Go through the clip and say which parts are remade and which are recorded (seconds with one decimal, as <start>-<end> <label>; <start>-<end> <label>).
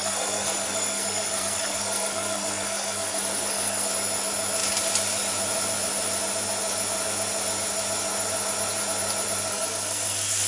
0.0-3.9 remade; 3.9-9.5 recorded; 9.5-10.5 remade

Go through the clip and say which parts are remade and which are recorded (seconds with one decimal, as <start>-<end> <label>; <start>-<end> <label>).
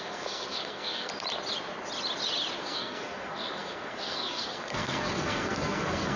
0.0-1.1 remade; 1.1-2.6 recorded; 2.6-6.2 remade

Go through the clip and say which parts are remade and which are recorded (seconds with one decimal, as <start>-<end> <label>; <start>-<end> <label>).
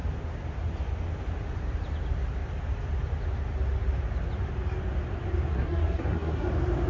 0.0-5.5 recorded; 5.5-6.5 remade; 6.5-6.9 recorded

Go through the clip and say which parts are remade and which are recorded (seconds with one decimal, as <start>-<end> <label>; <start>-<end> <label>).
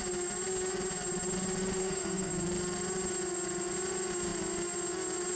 0.0-1.8 recorded; 1.8-2.3 remade; 2.3-5.3 recorded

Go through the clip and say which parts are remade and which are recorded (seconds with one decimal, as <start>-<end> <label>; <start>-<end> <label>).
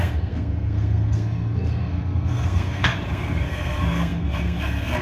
0.0-5.0 remade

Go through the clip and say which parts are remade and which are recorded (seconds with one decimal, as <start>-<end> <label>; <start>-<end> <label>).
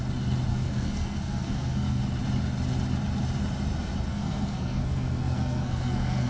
0.0-0.5 recorded; 0.5-2.0 remade; 2.0-4.1 recorded; 4.1-6.3 remade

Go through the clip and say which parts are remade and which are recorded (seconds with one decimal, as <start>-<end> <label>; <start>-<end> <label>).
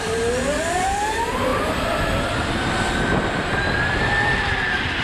0.0-5.0 recorded